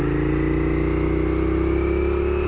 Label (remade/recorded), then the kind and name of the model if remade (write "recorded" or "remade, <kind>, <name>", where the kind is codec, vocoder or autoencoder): recorded